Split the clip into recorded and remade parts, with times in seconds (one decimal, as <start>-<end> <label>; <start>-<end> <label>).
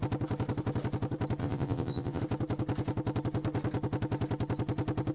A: 0.0-1.4 recorded; 1.4-2.2 remade; 2.2-5.1 recorded